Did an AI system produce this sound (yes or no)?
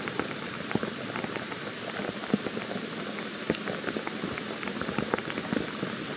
yes